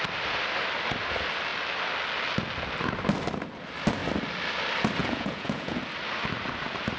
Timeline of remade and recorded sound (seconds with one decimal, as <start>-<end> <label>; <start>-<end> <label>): 0.0-5.0 recorded; 5.0-5.8 remade; 5.8-7.0 recorded